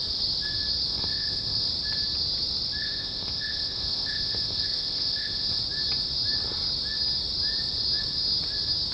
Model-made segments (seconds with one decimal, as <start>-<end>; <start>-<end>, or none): 0.9-1.7; 2.8-5.6